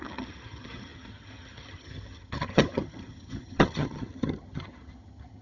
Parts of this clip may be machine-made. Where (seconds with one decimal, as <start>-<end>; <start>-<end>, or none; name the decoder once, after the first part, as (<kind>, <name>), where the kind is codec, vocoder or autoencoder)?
0.0-5.4 (vocoder, HiFi-GAN)